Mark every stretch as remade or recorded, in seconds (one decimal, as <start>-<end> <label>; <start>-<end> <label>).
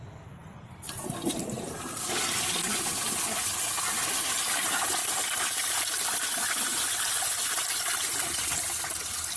0.0-0.4 recorded; 0.4-1.8 remade; 1.8-5.0 recorded; 5.0-5.9 remade; 5.9-9.4 recorded